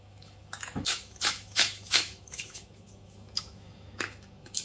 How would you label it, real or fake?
fake